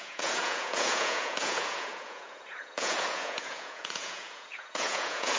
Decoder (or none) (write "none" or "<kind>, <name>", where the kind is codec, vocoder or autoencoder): vocoder, Vocos